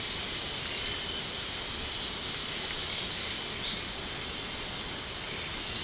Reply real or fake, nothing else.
real